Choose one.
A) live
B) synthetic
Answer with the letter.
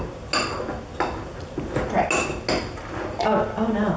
A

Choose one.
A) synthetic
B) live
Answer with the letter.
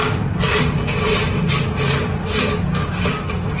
B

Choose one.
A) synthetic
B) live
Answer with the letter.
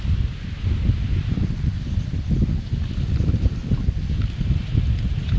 B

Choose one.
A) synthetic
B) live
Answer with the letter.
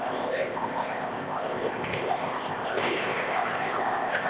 A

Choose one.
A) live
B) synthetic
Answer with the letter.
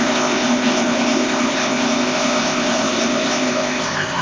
B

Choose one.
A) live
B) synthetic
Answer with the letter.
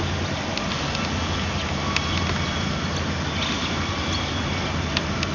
A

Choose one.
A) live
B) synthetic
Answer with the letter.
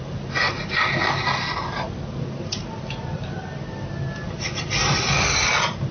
A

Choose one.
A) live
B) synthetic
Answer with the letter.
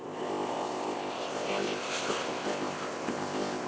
B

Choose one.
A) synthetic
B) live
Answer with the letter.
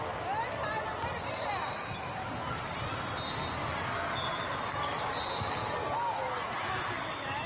B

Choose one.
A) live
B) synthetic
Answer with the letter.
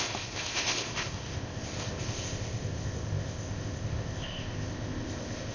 B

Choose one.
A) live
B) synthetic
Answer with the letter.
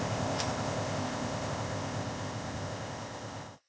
B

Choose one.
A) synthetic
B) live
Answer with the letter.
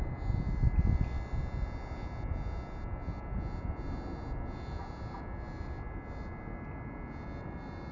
B